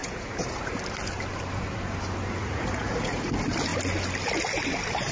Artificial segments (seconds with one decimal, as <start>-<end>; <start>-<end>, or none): 0.0-0.8; 2.4-3.3